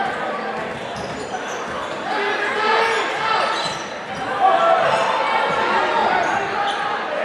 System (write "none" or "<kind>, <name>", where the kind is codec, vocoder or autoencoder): none